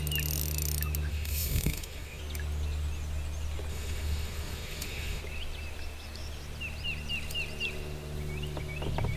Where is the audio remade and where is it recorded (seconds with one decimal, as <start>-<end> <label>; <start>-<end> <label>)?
0.0-1.1 recorded; 1.1-2.2 remade; 2.2-3.7 recorded; 3.7-5.2 remade; 5.2-9.2 recorded